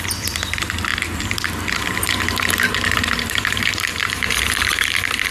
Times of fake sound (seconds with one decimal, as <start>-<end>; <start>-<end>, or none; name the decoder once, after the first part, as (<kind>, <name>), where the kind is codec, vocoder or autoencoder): 0.0-5.3 (vocoder, BigVGAN v2)